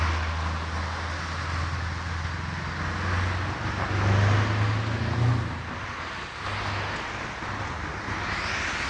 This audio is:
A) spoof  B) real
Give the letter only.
B